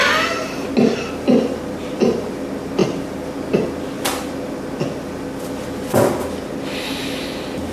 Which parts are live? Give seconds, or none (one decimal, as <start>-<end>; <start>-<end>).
0.0-7.7